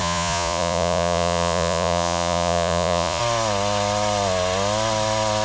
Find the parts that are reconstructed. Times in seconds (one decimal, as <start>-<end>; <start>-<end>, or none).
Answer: 0.0-3.2